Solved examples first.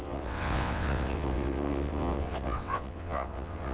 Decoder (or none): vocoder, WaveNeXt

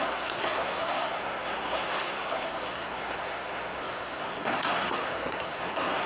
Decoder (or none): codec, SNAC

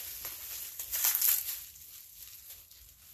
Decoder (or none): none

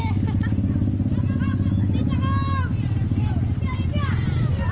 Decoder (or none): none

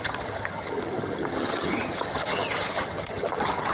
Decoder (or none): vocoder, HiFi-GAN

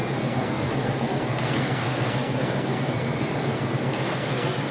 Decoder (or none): codec, SNAC